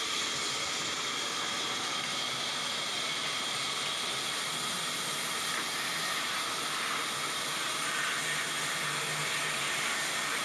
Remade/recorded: recorded